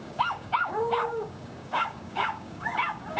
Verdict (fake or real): fake